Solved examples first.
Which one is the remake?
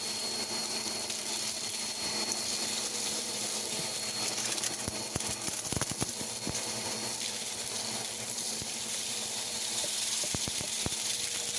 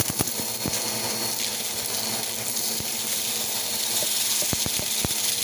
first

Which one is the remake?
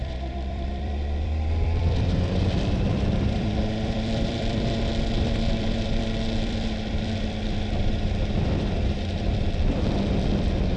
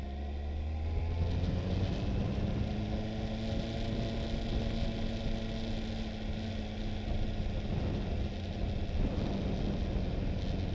first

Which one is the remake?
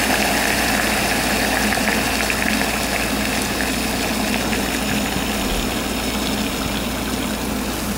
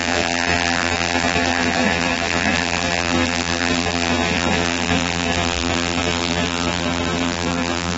second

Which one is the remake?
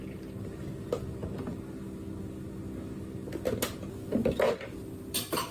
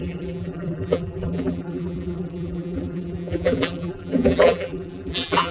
second